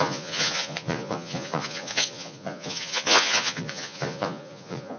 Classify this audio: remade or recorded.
remade